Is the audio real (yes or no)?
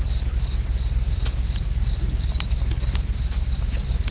yes